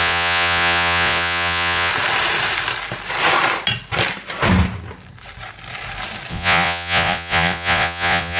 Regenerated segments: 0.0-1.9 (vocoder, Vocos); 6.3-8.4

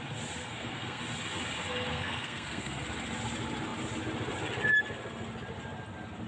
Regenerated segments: 0.4-1.0 (codec, SNAC); 1.9-2.8

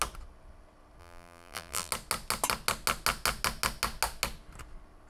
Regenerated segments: 1.0-1.9 (vocoder, BigVGAN v2)

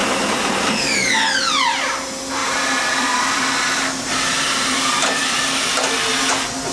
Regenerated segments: 2.4-4.8 (vocoder, BigVGAN v2)

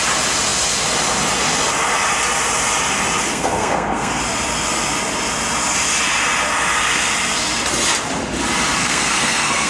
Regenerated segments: 3.3-4.2 (codec, SNAC); 8.8-9.7

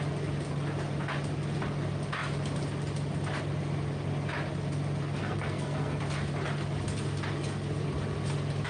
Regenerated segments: 5.2-6.0 (codec, SNAC)

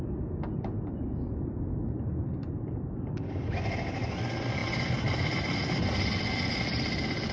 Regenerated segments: none

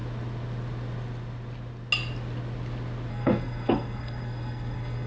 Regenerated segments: 3.1-5.1 (codec, SNAC)